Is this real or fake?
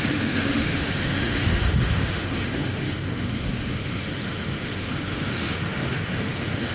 fake